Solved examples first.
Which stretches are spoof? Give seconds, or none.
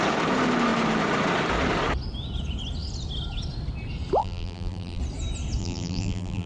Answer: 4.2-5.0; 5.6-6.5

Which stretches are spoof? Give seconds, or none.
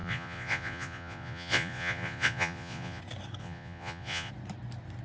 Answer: 0.0-3.0; 3.4-4.3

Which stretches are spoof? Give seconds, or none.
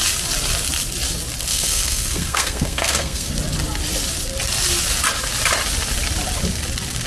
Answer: 1.5-3.3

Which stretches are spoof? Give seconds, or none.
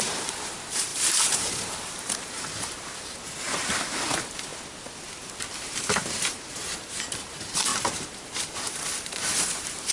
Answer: 0.0-4.5; 5.5-9.9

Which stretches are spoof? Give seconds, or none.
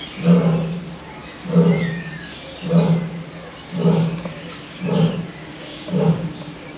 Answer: 3.8-4.8; 5.5-6.3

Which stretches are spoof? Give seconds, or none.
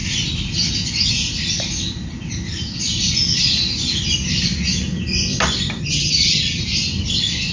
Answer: 5.8-6.6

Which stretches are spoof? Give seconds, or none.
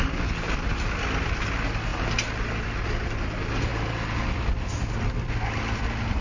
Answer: none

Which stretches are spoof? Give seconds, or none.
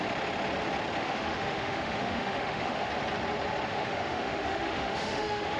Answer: 1.0-2.9; 3.7-5.6